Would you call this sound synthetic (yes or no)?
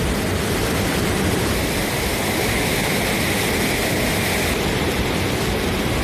no